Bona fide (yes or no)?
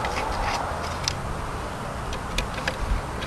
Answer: yes